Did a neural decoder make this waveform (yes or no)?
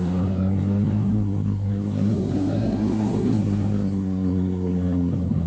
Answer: yes